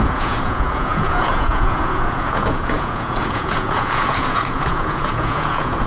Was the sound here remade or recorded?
remade